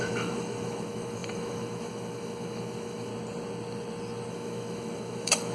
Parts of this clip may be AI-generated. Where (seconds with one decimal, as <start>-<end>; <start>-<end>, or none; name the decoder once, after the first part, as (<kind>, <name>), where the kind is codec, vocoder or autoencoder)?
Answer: 0.0-3.1 (autoencoder, DAC-VAE); 4.3-5.5